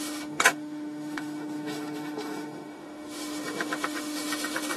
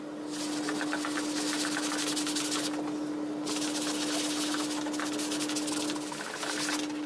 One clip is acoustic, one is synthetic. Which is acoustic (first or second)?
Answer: second